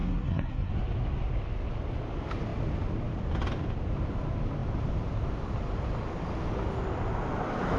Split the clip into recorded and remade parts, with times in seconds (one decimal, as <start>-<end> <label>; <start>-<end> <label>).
0.0-0.7 remade; 0.7-7.8 recorded